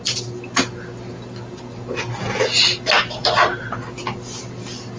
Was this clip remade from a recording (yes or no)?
no